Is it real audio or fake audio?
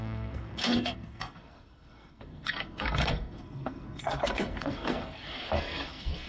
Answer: fake